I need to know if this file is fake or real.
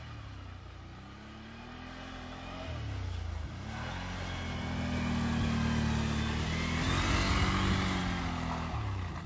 real